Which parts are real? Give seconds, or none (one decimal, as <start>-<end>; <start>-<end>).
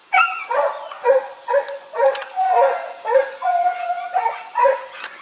none